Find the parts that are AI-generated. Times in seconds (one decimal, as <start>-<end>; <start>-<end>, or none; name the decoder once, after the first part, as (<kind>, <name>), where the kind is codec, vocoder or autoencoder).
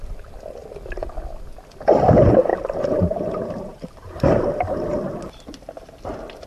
2.5-5.1 (vocoder, BigVGAN v2)